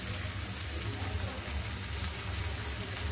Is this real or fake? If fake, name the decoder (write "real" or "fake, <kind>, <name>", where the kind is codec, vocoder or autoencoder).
real